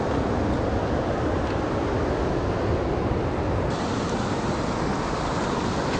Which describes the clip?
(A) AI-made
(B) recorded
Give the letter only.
B